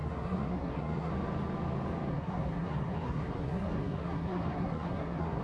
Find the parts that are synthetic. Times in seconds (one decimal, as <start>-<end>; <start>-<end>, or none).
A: 0.0-1.1; 2.1-5.4